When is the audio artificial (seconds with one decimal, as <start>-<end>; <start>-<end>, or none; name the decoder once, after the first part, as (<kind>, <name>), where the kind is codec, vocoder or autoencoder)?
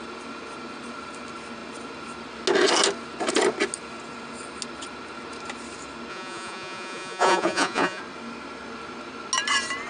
6.1-8.0 (vocoder, Vocos)